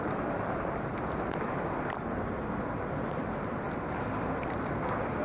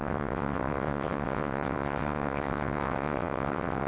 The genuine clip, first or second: first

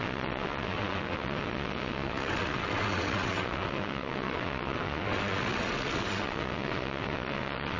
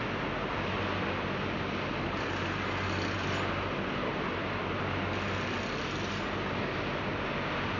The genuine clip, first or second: second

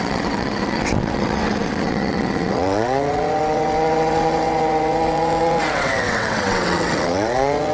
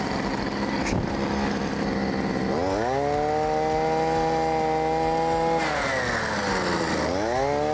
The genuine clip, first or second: second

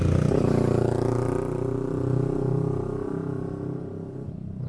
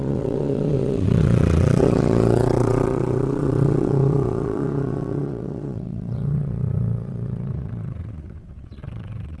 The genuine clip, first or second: first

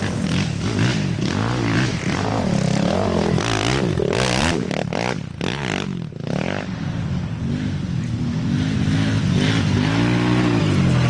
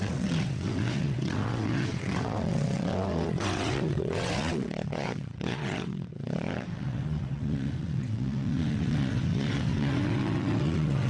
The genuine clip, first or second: first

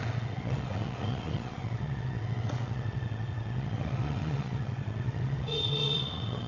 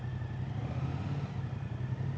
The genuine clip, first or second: second